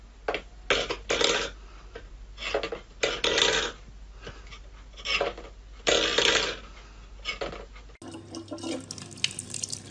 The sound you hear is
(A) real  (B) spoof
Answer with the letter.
A